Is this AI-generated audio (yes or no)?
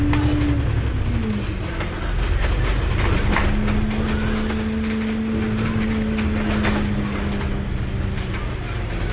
no